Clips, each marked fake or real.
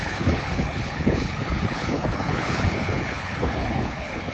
fake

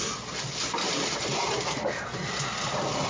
real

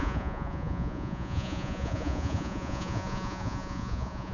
fake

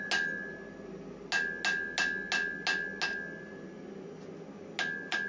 real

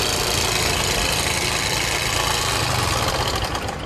real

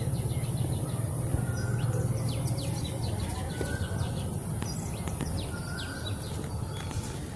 real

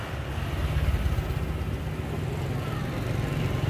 real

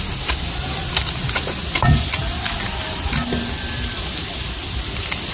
real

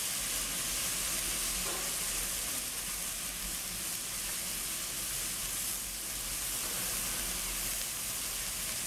real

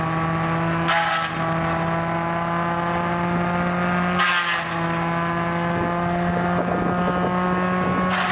real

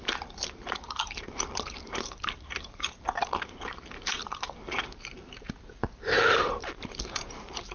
fake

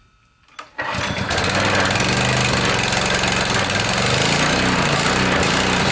real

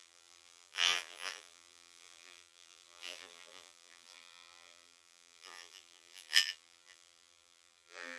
fake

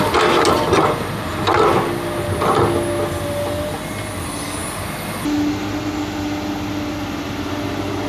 real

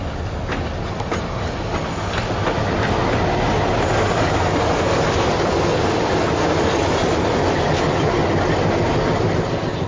real